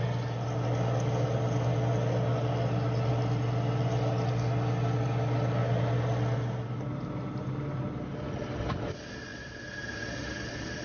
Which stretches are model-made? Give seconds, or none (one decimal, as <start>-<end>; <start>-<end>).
none